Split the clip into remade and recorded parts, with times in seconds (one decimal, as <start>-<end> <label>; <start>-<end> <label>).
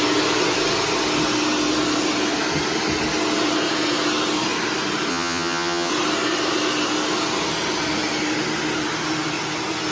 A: 0.0-5.1 recorded; 5.1-5.9 remade; 5.9-9.9 recorded